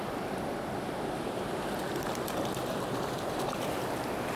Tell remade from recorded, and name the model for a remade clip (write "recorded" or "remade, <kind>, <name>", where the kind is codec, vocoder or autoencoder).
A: recorded